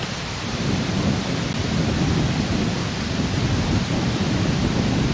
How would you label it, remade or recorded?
recorded